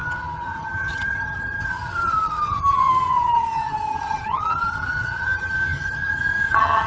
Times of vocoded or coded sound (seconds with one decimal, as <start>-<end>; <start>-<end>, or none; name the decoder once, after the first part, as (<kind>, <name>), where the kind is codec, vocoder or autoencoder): 0.0-6.9 (vocoder, HiFi-GAN)